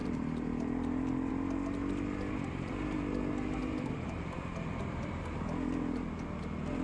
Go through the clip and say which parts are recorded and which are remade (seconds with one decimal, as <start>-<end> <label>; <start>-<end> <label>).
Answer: 0.0-1.3 remade; 1.3-3.6 recorded; 3.6-5.2 remade; 5.2-6.8 recorded